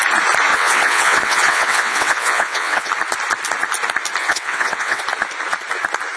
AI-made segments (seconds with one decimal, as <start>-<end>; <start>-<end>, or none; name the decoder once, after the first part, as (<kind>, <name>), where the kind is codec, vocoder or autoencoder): 0.5-2.9 (vocoder, WaveNeXt); 4.2-5.0